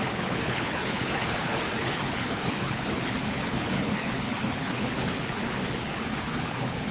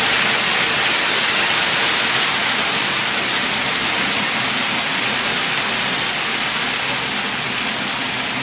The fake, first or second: first